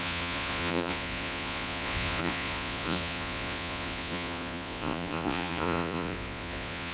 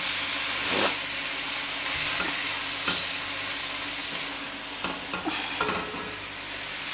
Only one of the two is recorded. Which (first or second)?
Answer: second